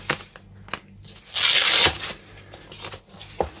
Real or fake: real